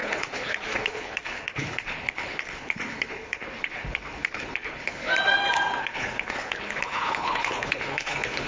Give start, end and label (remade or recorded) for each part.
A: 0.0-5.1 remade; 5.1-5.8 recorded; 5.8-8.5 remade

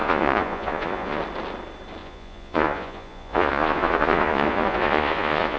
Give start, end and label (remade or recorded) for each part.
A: 0.0-1.2 remade; 1.2-2.0 recorded; 2.0-5.6 remade

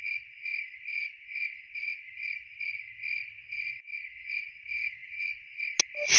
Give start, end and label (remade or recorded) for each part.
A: 0.0-3.4 recorded; 3.4-4.5 remade; 4.5-5.0 recorded; 5.0-5.6 remade; 5.6-6.2 recorded

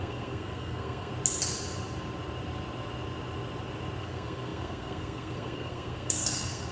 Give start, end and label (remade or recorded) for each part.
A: 0.0-1.1 remade; 1.1-4.0 recorded; 4.0-6.7 remade

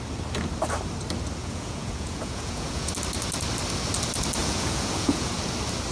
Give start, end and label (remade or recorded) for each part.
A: 0.0-1.4 recorded; 1.4-2.9 remade; 2.9-4.4 recorded; 4.4-5.3 remade; 5.3-5.9 recorded

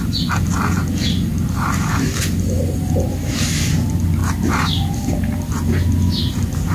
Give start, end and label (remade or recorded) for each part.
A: 0.0-6.7 recorded

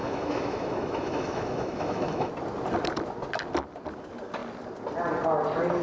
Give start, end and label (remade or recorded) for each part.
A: 0.0-2.3 remade; 2.3-5.8 recorded

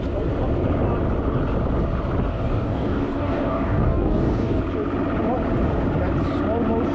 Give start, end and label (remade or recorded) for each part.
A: 0.0-2.3 recorded; 2.3-4.6 remade; 4.6-6.9 recorded